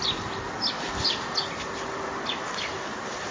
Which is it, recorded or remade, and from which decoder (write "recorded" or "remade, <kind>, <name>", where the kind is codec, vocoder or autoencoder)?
recorded